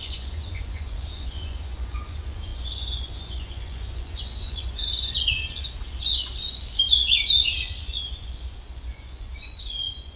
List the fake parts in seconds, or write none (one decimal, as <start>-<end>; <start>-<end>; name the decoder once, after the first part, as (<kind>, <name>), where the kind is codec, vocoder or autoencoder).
0.0-10.2 (vocoder, Vocos)